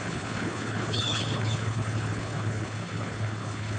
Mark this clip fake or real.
fake